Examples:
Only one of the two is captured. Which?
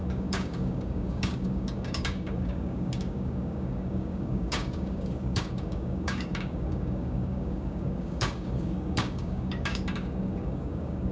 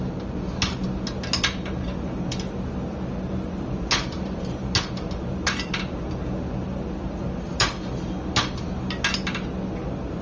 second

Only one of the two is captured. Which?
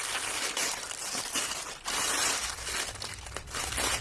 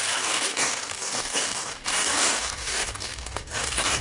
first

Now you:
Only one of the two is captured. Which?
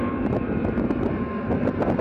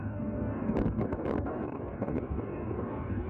first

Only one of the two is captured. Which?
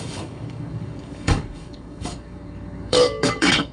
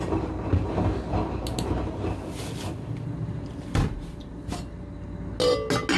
second